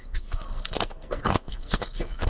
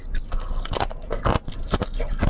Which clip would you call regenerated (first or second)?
first